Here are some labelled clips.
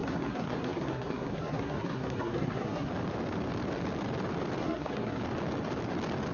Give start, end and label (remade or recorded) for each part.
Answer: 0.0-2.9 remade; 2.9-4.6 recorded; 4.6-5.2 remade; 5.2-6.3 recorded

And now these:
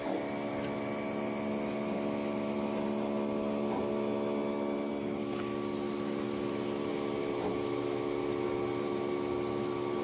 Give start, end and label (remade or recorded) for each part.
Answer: 0.0-10.0 recorded

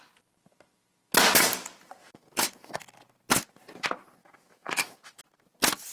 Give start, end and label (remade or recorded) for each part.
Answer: 0.0-2.0 recorded; 2.0-2.7 remade; 2.7-4.2 recorded; 4.2-5.2 remade; 5.2-5.9 recorded

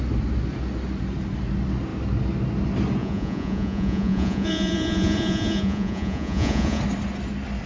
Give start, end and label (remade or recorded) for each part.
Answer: 0.0-3.0 recorded; 3.0-6.8 remade; 6.8-7.7 recorded

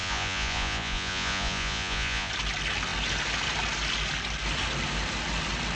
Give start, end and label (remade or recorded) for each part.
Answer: 0.0-2.3 remade; 2.3-5.7 recorded

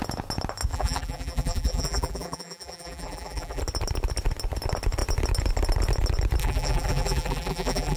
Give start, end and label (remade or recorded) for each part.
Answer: 0.0-0.7 recorded; 0.7-3.6 remade; 3.6-6.4 recorded; 6.4-8.0 remade

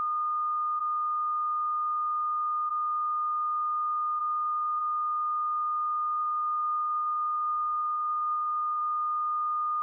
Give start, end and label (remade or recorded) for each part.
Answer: 0.0-4.2 recorded; 4.2-4.8 remade; 4.8-6.2 recorded; 6.2-8.8 remade; 8.8-9.8 recorded